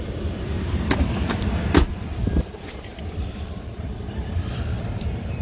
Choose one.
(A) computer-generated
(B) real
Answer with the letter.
A